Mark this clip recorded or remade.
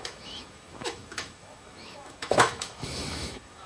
remade